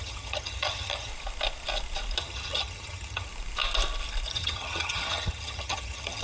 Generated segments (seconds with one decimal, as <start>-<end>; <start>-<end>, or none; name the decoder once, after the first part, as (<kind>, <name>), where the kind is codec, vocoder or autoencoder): 0.0-1.1 (vocoder, HiFi-GAN); 2.2-3.3; 4.3-6.2

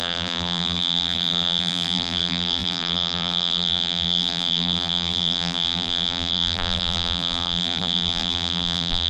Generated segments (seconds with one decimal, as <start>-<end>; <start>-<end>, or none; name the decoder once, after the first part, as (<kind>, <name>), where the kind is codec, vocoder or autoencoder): 0.0-9.1 (vocoder, BigVGAN v2)

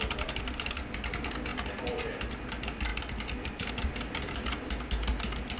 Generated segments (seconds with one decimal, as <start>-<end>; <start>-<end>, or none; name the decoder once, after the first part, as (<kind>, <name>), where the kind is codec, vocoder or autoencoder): none

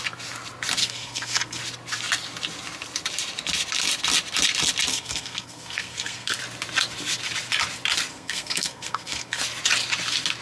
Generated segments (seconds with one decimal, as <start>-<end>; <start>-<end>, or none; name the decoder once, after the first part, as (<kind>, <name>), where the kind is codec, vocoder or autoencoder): 0.8-1.6 (codec, SNAC); 4.9-6.4; 8.1-9.4